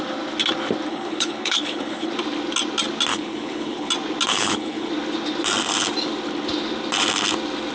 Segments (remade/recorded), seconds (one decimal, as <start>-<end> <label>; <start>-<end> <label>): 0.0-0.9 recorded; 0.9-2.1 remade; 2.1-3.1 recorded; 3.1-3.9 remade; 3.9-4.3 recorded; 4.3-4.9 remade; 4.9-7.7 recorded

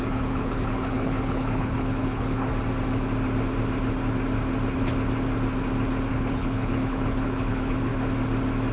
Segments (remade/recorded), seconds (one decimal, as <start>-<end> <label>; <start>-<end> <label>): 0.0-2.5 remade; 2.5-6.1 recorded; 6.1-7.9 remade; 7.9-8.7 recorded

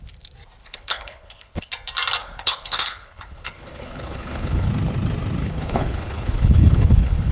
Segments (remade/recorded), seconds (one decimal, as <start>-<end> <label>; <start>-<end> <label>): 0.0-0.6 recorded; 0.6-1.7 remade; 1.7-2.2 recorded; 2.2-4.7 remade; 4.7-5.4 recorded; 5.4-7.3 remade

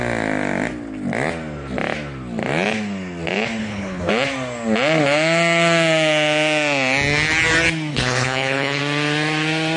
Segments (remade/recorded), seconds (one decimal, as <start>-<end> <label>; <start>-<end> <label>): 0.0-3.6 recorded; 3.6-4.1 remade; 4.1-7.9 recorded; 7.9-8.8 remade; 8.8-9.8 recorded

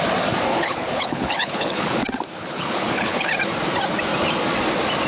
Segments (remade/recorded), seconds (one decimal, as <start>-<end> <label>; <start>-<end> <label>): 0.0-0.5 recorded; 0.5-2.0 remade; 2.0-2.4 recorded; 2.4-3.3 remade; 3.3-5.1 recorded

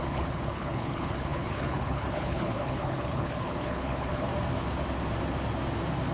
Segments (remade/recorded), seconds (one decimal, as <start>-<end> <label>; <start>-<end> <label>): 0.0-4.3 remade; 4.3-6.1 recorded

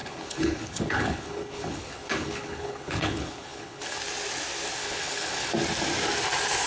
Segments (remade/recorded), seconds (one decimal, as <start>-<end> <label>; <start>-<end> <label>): 0.0-4.0 remade; 4.0-4.8 recorded; 4.8-5.5 remade; 5.5-6.7 recorded